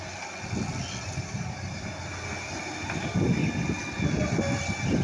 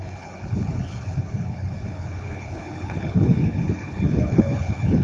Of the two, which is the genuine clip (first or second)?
first